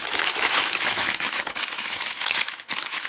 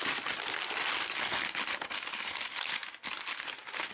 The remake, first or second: first